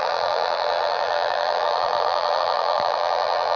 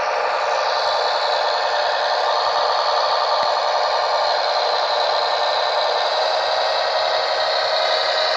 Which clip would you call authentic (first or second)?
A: second